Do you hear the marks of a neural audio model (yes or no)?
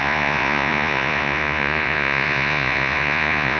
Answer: yes